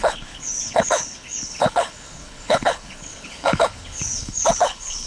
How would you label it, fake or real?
fake